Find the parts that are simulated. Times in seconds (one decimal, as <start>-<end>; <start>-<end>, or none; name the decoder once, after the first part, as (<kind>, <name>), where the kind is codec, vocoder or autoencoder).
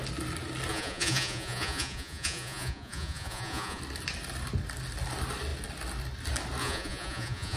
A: 0.7-3.8 (vocoder, Vocos); 6.6-7.6